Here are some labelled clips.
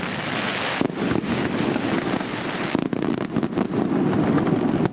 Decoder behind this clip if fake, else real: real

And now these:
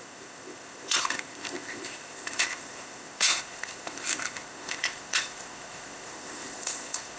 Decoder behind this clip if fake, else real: fake, codec, ZipCodec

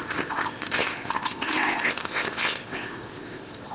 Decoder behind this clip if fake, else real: fake, codec, ZipCodec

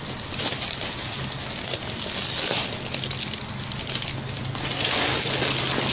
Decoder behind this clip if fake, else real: real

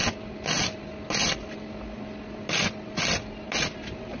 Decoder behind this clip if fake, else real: real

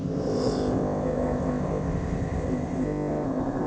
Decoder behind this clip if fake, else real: fake, codec, ZipCodec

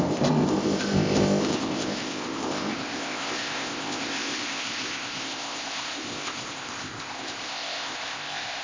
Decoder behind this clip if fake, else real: fake, codec, ZipCodec